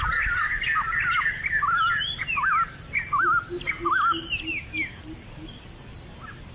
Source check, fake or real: real